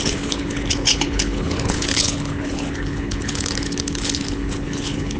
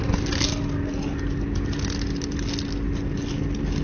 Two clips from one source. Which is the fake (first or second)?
first